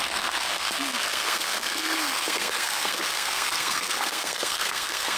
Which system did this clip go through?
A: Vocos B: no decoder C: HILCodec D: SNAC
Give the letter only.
D